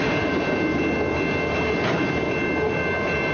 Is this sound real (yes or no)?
yes